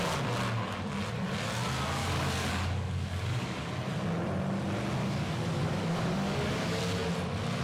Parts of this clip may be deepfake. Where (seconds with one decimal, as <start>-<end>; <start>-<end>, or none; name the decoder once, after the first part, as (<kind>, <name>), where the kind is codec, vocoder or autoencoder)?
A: 2.0-3.7 (codec, DAC); 5.0-6.8